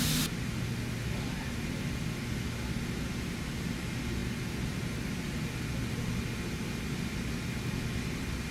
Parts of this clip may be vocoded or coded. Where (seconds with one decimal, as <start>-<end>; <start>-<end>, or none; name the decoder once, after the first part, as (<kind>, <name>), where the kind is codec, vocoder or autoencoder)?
none